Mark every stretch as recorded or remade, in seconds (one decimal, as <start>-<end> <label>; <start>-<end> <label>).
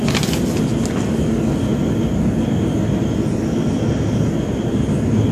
0.0-5.3 recorded